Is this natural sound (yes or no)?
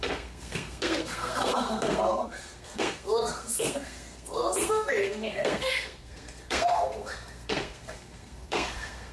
no